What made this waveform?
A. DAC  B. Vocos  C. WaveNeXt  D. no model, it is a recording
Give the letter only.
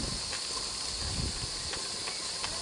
D